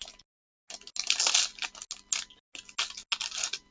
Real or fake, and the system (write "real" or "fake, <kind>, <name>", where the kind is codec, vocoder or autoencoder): real